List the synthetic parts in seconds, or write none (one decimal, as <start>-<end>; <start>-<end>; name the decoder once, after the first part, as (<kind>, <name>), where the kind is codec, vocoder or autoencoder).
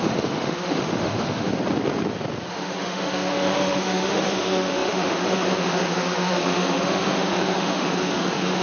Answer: 0.0-1.5 (autoencoder, DAC-VAE); 2.5-8.6